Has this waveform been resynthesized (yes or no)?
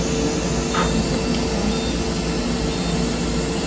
no